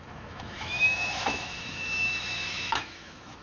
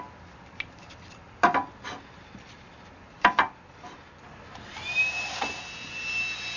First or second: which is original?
second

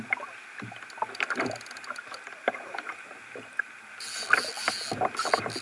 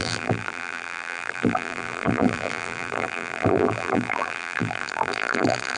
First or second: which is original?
first